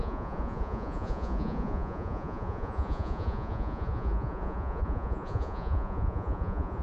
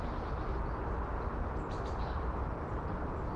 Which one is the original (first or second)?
second